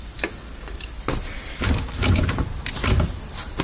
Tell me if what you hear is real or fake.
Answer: fake